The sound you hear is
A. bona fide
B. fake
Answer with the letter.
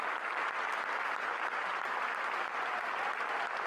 A